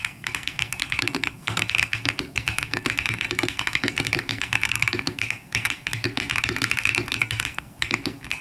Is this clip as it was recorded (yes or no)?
no